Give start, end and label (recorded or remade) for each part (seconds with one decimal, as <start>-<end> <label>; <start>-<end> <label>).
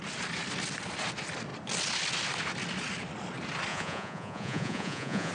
0.0-3.7 recorded; 3.7-5.3 remade